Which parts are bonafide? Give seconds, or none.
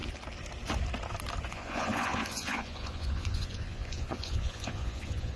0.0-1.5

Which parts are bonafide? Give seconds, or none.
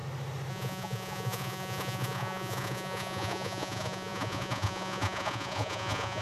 0.0-0.5